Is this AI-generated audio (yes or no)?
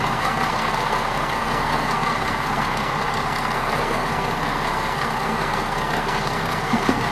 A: yes